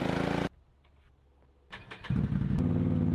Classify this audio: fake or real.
real